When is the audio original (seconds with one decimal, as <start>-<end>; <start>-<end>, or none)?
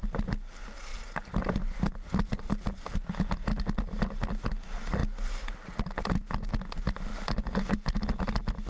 0.0-0.9; 2.5-7.1; 8.0-8.7